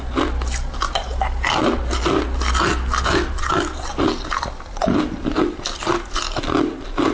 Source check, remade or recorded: recorded